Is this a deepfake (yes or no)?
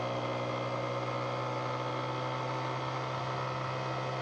no